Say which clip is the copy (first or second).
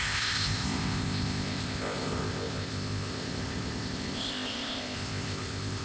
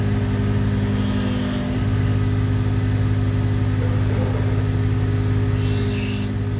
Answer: first